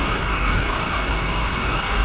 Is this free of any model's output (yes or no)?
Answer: no